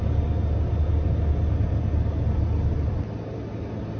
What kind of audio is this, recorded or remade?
recorded